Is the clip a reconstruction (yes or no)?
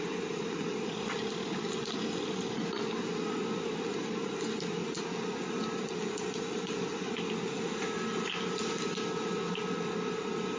no